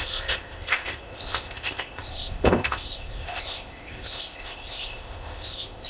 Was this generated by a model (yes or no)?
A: yes